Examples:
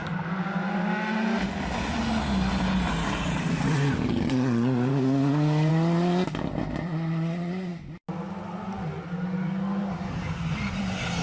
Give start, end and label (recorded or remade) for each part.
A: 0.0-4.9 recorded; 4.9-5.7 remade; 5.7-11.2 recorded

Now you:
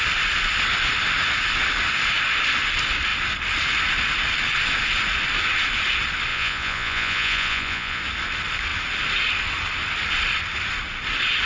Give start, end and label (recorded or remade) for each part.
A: 0.0-6.3 recorded; 6.3-8.0 remade; 8.0-11.5 recorded

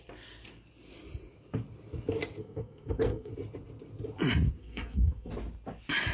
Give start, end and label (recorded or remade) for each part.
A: 0.0-2.4 recorded; 2.4-3.3 remade; 3.3-4.6 recorded; 4.6-5.3 remade; 5.3-6.1 recorded

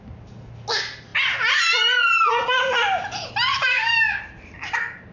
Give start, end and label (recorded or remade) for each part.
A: 0.0-3.6 recorded; 3.6-4.2 remade; 4.2-5.1 recorded

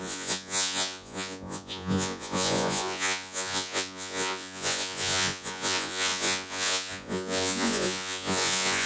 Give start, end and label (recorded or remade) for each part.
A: 0.0-8.9 remade

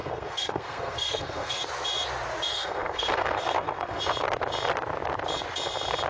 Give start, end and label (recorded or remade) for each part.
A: 0.0-1.6 remade; 1.6-2.5 recorded; 2.5-4.0 remade; 4.0-6.1 recorded

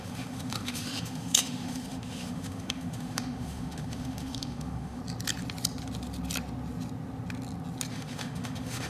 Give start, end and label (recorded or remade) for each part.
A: 0.0-5.0 remade; 5.0-7.9 recorded; 7.9-8.9 remade